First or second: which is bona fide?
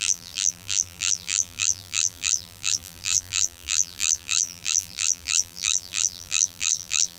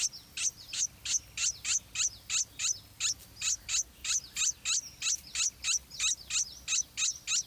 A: second